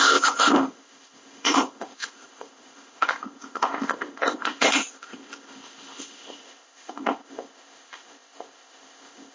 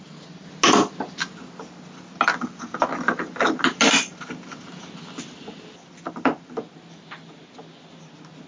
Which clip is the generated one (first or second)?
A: first